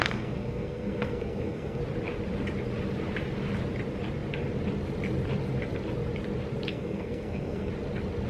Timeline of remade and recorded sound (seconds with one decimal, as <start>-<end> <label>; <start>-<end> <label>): 0.0-1.8 remade; 1.8-6.7 recorded; 6.7-7.7 remade; 7.7-8.3 recorded